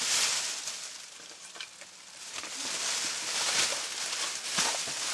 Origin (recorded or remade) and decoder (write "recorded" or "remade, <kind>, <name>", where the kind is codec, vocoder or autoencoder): recorded